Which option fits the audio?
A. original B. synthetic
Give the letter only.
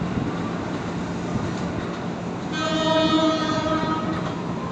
A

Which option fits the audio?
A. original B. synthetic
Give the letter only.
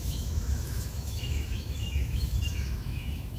B